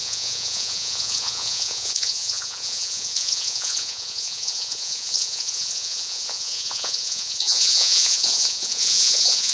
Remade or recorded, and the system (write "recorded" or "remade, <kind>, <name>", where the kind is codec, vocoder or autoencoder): remade, vocoder, Vocos